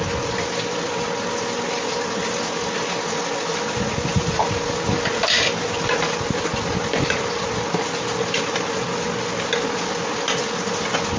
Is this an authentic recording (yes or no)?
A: yes